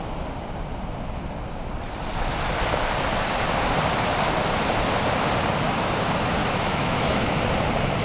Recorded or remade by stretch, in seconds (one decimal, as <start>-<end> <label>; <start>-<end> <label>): 0.0-6.4 recorded; 6.4-7.4 remade; 7.4-8.0 recorded